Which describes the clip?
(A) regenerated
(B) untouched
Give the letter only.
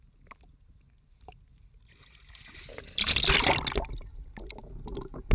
B